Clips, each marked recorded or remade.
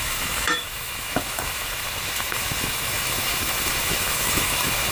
remade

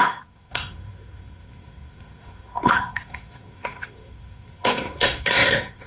remade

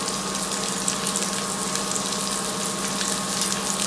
recorded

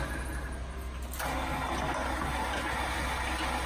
recorded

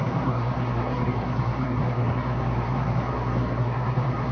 remade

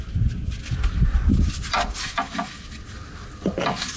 recorded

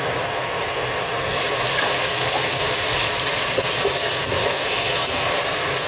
recorded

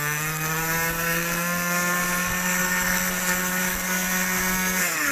remade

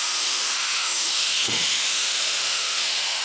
remade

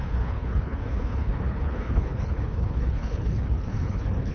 remade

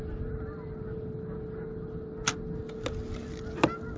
recorded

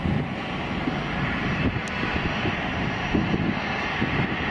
recorded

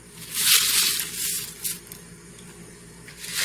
recorded